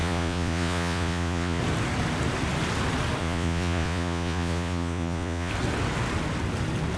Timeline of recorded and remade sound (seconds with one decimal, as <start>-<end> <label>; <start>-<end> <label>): 0.0-1.6 remade; 1.6-3.2 recorded; 3.2-5.5 remade; 5.5-7.0 recorded